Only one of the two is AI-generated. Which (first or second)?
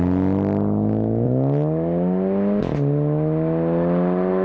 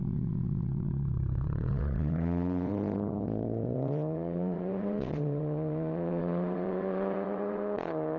second